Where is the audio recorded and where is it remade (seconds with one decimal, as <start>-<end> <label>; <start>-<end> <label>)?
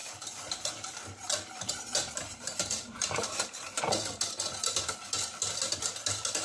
0.0-3.8 remade; 3.8-6.4 recorded